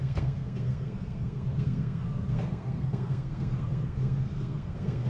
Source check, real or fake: fake